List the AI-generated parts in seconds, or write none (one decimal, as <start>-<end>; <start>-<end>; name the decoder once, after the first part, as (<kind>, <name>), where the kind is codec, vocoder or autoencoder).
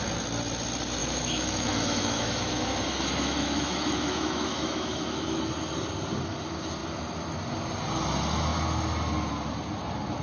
1.0-5.4 (autoencoder, DAC-VAE)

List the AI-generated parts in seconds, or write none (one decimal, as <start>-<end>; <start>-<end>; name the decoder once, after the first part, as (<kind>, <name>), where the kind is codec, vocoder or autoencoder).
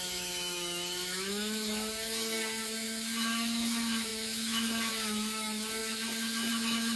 0.0-7.0 (autoencoder, DAC-VAE)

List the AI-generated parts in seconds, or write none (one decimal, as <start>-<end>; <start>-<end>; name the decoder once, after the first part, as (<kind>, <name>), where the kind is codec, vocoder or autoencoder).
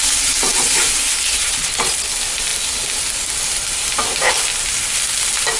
none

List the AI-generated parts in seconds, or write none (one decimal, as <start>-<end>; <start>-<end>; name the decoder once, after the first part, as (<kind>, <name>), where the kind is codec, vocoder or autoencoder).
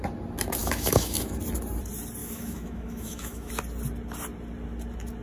0.6-1.4 (autoencoder, DAC-VAE); 2.2-3.5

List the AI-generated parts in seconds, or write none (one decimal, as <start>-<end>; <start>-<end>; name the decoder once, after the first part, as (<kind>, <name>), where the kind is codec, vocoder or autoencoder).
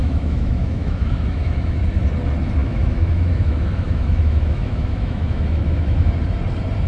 0.0-1.8 (autoencoder, DAC-VAE); 2.6-6.1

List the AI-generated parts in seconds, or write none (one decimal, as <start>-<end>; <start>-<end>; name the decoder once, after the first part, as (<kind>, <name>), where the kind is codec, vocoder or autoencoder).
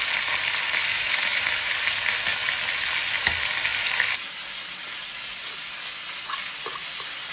0.9-1.7 (autoencoder, DAC-VAE)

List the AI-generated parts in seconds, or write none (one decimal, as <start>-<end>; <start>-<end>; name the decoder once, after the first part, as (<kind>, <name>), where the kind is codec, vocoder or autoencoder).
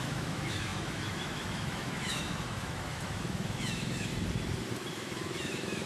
0.0-4.1 (autoencoder, DAC-VAE); 4.9-5.9